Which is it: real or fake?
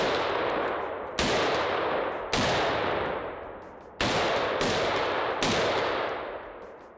real